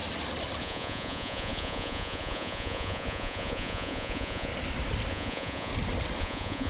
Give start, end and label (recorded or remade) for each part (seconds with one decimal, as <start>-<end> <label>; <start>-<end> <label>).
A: 0.0-0.6 recorded; 0.6-4.5 remade; 4.5-5.1 recorded; 5.1-5.7 remade; 5.7-6.2 recorded; 6.2-6.7 remade